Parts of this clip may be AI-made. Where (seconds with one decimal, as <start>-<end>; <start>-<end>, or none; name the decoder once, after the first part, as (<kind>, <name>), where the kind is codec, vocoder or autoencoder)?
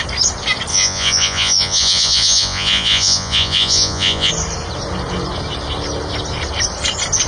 0.7-4.3 (vocoder, Vocos)